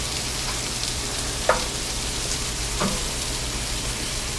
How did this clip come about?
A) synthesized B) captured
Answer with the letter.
A